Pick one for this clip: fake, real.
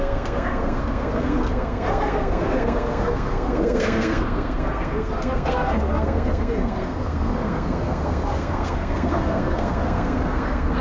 fake